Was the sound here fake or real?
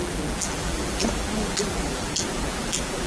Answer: fake